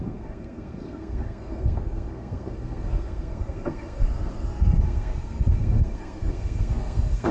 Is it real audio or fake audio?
fake